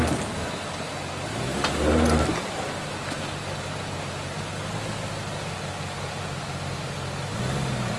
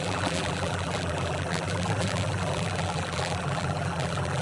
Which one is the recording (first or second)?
first